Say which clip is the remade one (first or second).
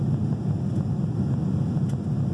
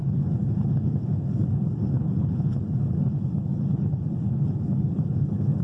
second